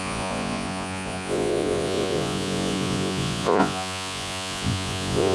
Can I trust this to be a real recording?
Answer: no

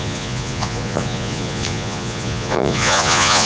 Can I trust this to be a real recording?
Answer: no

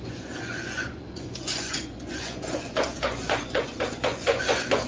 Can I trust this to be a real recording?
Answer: no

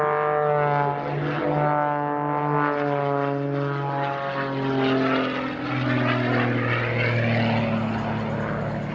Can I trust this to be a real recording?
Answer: yes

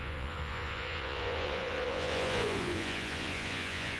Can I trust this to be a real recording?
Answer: no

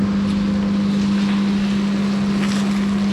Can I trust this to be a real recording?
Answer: yes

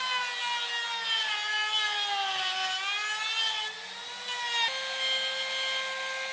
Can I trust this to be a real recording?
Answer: yes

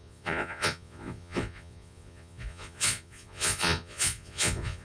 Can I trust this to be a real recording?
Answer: no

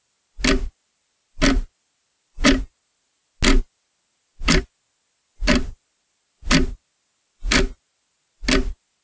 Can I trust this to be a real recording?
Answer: yes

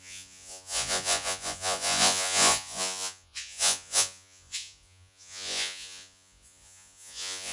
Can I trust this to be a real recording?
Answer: no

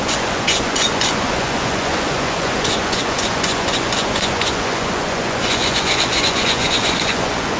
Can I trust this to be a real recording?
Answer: no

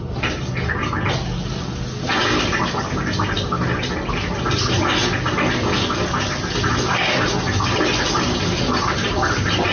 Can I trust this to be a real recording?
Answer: yes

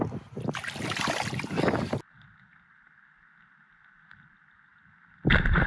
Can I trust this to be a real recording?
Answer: yes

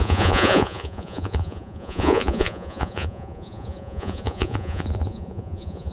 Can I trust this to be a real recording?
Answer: no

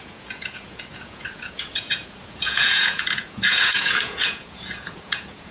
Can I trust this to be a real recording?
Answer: no